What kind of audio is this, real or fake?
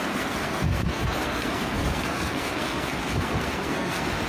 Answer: fake